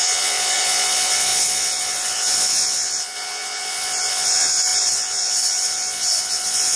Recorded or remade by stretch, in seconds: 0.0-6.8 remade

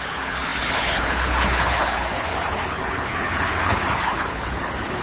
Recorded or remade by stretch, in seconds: 0.0-5.0 remade